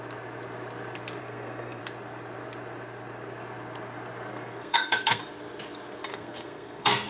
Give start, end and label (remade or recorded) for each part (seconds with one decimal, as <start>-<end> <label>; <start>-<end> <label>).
0.0-1.2 recorded; 1.2-1.8 remade; 1.8-4.3 recorded; 4.3-5.2 remade; 5.2-6.1 recorded; 6.1-7.1 remade